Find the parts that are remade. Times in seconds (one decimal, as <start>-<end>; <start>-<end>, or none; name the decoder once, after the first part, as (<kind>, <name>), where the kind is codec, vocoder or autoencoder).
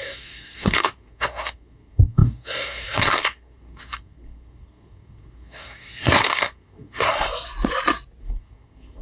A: 0.0-7.3 (codec, SNAC); 8.2-9.0